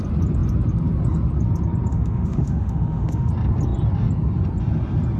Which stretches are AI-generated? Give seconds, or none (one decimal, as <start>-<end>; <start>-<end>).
1.9-3.3